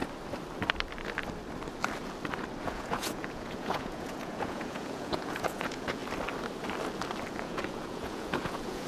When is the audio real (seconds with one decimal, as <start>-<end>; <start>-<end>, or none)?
0.0-2.6; 6.0-7.3